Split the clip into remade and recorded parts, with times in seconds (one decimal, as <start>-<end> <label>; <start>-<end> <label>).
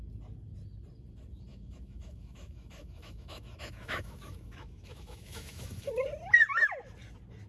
0.0-1.5 recorded; 1.5-5.9 remade; 5.9-7.5 recorded